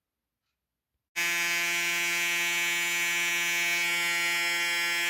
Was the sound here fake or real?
real